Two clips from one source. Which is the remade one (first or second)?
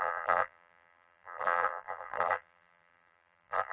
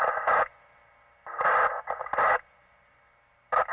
first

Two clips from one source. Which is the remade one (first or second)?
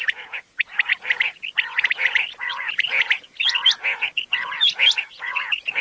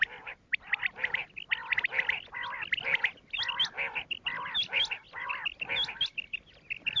first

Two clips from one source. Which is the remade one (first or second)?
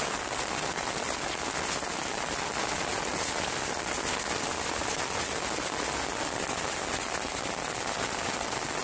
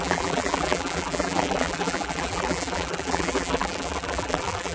second